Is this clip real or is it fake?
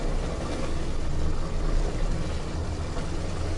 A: real